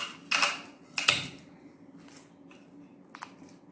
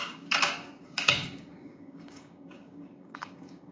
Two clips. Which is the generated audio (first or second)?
second